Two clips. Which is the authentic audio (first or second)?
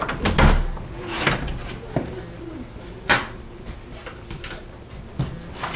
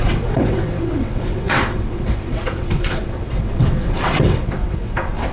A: first